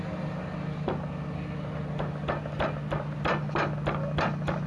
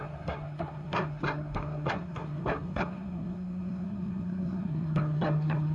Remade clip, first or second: second